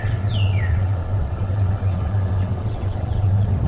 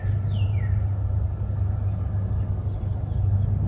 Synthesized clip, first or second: first